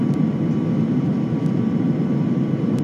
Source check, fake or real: real